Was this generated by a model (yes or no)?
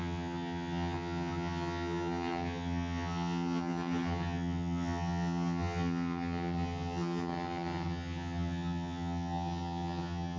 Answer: yes